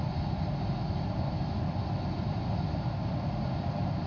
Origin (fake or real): real